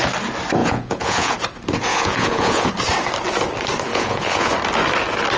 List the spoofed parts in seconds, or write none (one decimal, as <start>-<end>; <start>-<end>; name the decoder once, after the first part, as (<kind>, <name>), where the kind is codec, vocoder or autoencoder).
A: 0.6-1.3 (vocoder, Vocos); 1.9-2.7; 3.9-4.5